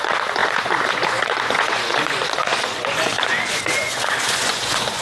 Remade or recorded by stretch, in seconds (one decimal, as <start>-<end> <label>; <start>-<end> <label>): 0.0-5.0 remade